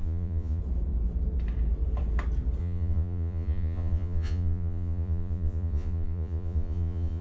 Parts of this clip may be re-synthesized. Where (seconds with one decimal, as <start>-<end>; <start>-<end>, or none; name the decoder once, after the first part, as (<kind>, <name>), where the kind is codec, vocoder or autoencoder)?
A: 0.0-0.6 (vocoder, Vocos); 2.6-7.2